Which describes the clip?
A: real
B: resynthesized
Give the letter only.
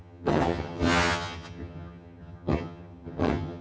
B